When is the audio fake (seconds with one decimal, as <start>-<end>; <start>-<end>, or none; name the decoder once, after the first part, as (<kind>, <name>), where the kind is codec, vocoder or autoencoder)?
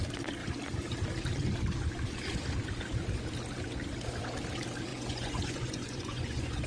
4.9-6.7 (vocoder, Vocos)